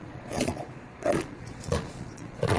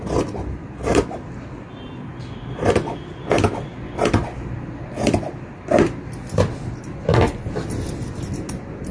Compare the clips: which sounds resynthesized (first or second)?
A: first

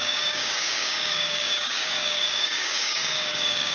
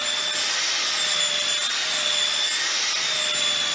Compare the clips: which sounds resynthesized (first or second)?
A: first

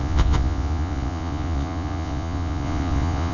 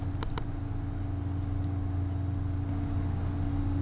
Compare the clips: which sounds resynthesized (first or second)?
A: first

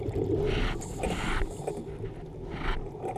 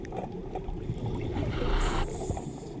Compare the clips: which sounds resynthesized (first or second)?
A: second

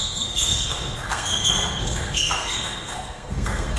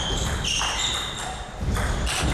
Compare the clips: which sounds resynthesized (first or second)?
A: first